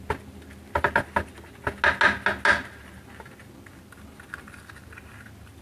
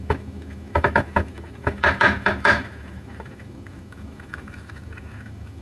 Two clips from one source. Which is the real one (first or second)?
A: first